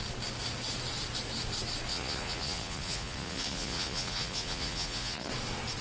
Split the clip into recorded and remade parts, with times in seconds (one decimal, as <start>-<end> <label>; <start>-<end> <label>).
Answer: 0.0-1.9 recorded; 1.9-5.3 remade; 5.3-5.8 recorded